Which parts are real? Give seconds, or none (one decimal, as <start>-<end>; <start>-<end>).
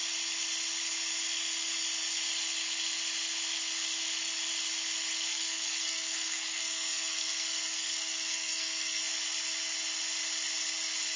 0.0-5.3; 9.0-11.2